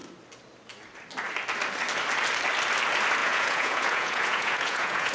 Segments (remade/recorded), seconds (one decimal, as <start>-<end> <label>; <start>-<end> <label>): 0.0-3.2 recorded; 3.2-5.1 remade